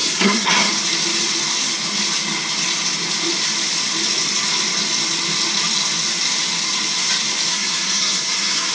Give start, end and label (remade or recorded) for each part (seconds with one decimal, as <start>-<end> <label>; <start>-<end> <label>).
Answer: 0.0-0.7 remade; 0.7-7.5 recorded; 7.5-8.7 remade